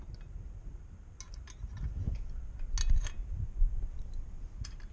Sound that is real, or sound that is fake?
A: real